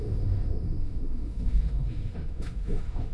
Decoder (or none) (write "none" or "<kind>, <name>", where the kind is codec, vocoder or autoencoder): autoencoder, DAC-VAE